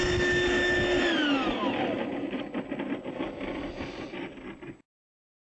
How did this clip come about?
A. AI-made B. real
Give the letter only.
B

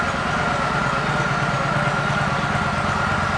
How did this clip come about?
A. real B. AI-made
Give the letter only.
A